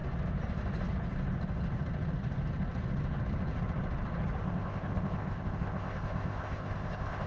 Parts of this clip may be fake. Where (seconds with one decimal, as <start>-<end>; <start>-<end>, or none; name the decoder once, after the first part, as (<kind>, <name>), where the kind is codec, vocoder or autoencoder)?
4.4-7.3 (codec, ZipCodec)

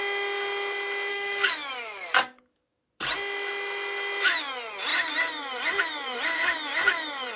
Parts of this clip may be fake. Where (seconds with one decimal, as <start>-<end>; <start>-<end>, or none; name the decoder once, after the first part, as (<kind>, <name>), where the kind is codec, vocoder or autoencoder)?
1.1-2.8 (codec, DAC)

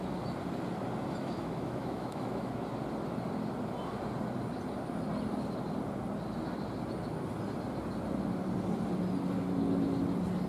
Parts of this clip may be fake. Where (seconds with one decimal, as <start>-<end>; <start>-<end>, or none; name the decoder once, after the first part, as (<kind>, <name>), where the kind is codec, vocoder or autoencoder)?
1.2-2.6 (autoencoder, DAC-VAE)

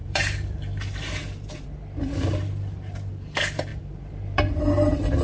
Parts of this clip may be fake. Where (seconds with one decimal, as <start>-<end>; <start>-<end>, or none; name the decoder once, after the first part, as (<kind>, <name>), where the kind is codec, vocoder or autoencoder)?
0.0-5.2 (vocoder, BigVGAN v2)

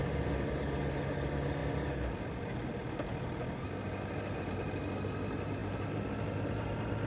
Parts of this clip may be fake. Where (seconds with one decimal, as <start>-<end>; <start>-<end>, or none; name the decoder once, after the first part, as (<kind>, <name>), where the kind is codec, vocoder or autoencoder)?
none

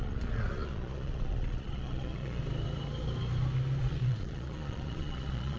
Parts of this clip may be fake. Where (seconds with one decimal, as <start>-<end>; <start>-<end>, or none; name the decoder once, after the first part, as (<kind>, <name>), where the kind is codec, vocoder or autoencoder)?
0.0-2.4 (vocoder, Vocos); 3.8-5.6